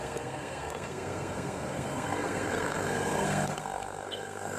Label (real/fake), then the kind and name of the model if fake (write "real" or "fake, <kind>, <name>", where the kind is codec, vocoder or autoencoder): fake, codec, SNAC